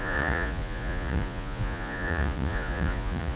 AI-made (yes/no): yes